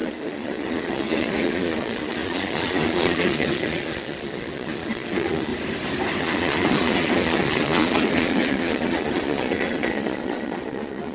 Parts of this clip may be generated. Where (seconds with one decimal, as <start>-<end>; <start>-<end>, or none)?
0.0-5.5; 6.2-11.1